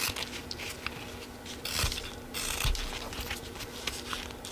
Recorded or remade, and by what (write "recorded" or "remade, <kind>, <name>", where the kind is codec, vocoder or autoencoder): recorded